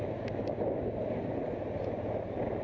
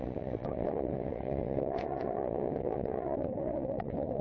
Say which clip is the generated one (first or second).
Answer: second